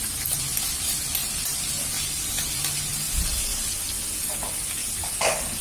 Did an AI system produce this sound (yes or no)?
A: no